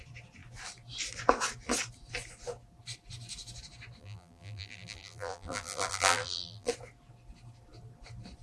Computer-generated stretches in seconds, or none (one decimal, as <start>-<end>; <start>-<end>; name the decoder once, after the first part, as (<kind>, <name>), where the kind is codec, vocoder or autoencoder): 4.0-6.7 (vocoder, BigVGAN v2)